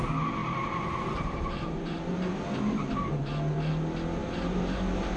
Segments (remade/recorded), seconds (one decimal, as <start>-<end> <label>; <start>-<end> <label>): 0.0-0.4 recorded; 0.4-2.3 remade; 2.3-4.2 recorded; 4.2-5.2 remade